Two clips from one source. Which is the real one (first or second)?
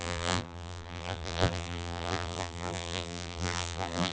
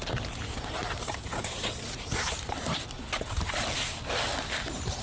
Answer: second